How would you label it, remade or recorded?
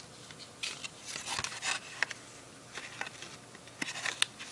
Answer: recorded